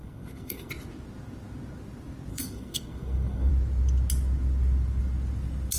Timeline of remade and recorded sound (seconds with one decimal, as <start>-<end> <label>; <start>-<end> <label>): 0.0-0.7 remade; 0.7-2.3 recorded; 2.3-3.5 remade; 3.5-5.8 recorded